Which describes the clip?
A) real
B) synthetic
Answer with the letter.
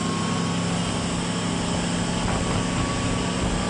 A